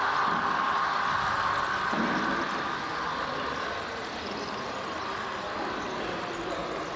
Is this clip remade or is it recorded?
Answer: recorded